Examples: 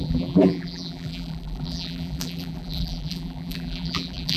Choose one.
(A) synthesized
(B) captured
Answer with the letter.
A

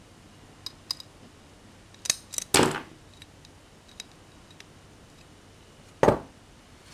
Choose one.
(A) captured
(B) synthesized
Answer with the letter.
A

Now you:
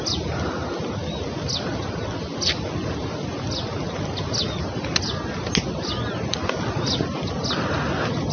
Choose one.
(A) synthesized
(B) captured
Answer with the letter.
B